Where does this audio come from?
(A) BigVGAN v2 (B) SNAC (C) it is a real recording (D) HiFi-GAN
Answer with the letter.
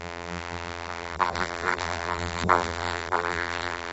A